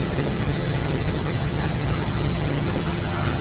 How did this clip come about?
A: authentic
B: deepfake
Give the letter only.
B